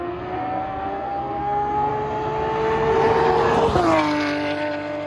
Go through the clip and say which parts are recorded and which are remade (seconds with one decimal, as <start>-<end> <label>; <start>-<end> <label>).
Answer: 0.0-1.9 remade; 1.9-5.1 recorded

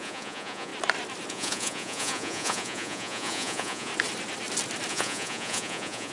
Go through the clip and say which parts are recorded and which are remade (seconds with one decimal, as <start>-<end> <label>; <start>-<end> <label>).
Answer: 0.0-0.7 remade; 0.7-1.3 recorded; 1.3-3.9 remade; 3.9-4.9 recorded; 4.9-6.1 remade

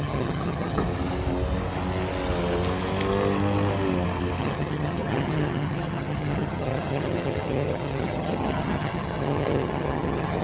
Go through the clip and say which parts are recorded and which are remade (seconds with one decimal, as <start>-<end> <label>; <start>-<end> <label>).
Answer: 0.0-0.8 remade; 0.8-4.4 recorded; 4.4-10.4 remade

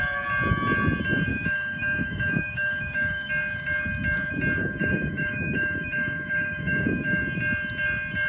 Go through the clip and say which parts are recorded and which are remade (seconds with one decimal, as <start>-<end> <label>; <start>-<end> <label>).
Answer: 0.0-1.3 recorded; 1.3-3.3 remade; 3.3-4.6 recorded; 4.6-7.2 remade; 7.2-8.3 recorded

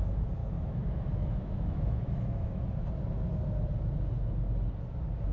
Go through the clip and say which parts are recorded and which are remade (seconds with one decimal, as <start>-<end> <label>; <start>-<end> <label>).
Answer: 0.0-0.4 recorded; 0.4-2.6 remade; 2.6-5.3 recorded